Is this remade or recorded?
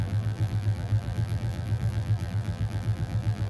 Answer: remade